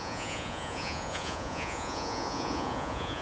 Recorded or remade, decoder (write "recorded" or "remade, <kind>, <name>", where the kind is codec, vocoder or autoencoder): remade, vocoder, Vocos